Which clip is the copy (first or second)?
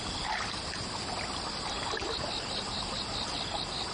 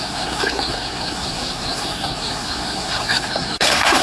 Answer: second